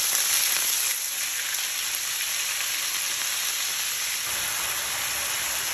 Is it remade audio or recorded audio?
recorded